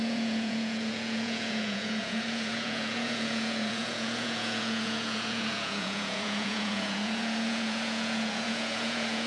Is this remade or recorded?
remade